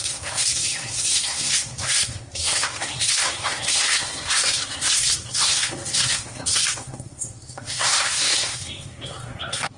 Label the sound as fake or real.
fake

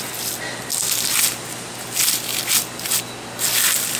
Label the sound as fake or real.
real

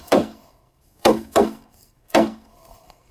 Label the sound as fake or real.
fake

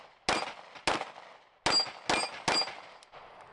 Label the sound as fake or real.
real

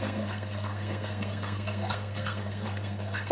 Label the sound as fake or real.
fake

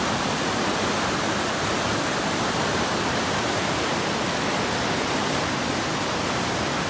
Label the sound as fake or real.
real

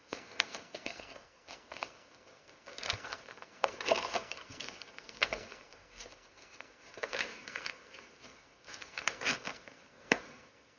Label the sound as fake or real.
fake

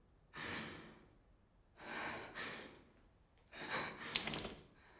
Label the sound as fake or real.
real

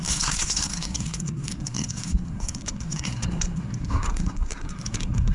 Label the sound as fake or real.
fake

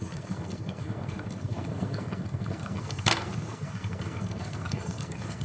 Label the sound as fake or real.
fake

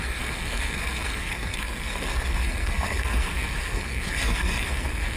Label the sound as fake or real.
fake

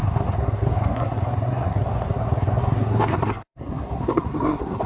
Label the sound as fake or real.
fake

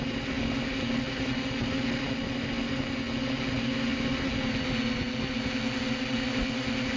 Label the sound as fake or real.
real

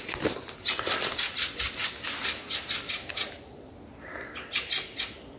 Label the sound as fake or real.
real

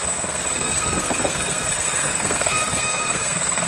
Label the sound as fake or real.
fake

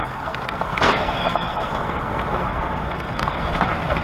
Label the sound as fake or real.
fake